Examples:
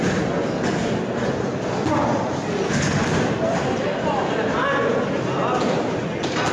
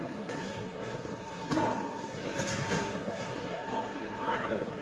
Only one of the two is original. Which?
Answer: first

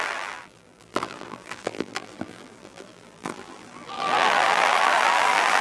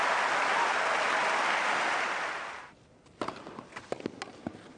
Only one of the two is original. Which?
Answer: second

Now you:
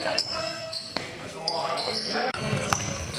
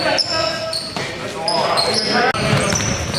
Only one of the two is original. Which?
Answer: second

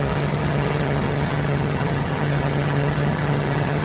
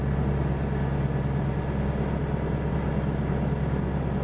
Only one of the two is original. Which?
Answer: second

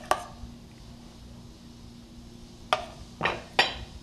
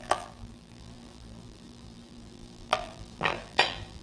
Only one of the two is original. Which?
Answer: first